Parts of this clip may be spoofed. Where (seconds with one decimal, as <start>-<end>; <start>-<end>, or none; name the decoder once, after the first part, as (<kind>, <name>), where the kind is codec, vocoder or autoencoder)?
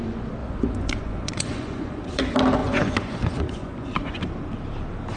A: 0.4-2.2 (vocoder, Vocos); 2.6-4.2